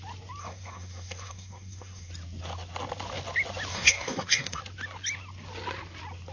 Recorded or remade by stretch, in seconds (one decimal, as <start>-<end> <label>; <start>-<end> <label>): 0.0-0.4 recorded; 0.4-2.1 remade; 2.1-3.7 recorded; 3.7-4.6 remade; 4.6-6.3 recorded